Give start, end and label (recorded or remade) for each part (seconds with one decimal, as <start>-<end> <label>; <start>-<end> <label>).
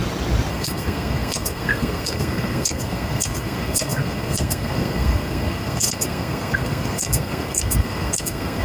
0.0-0.5 recorded; 0.5-8.6 remade